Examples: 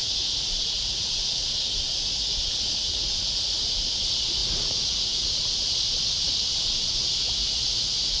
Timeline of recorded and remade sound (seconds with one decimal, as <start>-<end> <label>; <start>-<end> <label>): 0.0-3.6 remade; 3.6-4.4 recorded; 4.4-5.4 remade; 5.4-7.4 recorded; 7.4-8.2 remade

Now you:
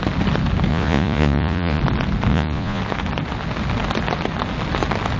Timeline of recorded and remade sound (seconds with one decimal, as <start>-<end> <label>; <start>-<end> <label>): 0.0-0.7 recorded; 0.7-1.8 remade; 1.8-2.3 recorded; 2.3-2.8 remade; 2.8-5.2 recorded

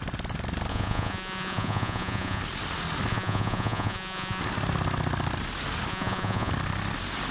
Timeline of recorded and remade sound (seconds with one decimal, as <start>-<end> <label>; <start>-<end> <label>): 0.0-0.7 recorded; 0.7-2.4 remade; 2.4-3.1 recorded; 3.1-4.4 remade; 4.4-5.9 recorded; 5.9-6.5 remade; 6.5-7.3 recorded

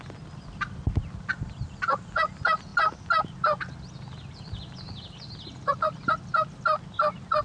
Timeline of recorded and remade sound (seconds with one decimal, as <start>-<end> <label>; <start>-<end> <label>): 0.0-7.4 recorded

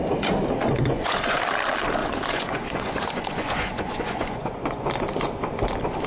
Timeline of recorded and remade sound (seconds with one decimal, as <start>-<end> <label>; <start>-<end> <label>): 0.0-0.6 recorded; 0.6-1.4 remade; 1.4-2.0 recorded; 2.0-4.9 remade; 4.9-6.1 recorded

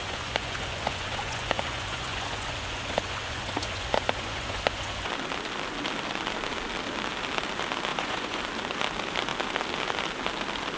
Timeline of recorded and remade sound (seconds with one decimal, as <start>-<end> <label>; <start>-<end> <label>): 0.0-5.1 remade; 5.1-7.9 recorded; 7.9-8.4 remade; 8.4-10.8 recorded

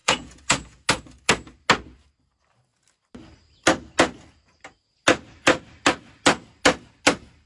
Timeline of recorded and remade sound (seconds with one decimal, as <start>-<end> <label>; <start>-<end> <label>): 0.0-0.9 remade; 0.9-7.5 recorded

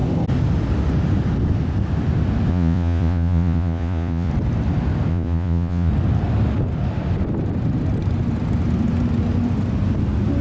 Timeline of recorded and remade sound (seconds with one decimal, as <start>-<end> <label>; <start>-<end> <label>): 0.0-2.5 recorded; 2.5-4.3 remade; 4.3-5.1 recorded; 5.1-5.9 remade; 5.9-10.4 recorded